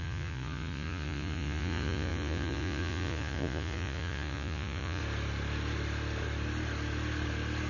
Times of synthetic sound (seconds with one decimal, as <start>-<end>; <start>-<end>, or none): 0.0-5.0